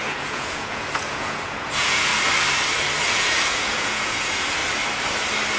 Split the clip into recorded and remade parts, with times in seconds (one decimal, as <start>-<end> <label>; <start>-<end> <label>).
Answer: 0.0-2.1 remade; 2.1-3.1 recorded; 3.1-4.6 remade; 4.6-5.6 recorded